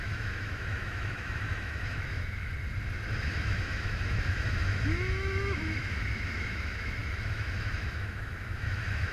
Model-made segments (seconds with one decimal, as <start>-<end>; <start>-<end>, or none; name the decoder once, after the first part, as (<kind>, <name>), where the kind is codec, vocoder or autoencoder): 0.0-2.5 (autoencoder, DAC-VAE); 3.2-9.1